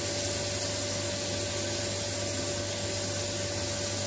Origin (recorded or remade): recorded